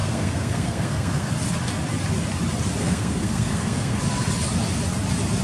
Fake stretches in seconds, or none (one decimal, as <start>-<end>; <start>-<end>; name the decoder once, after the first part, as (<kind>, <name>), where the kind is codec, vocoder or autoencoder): 0.0-1.3 (codec, SNAC); 2.8-4.0